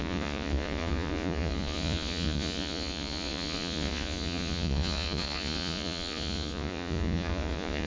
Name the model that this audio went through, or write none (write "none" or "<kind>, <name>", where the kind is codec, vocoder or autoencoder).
vocoder, Vocos